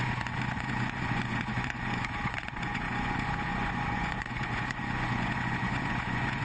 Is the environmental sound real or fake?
fake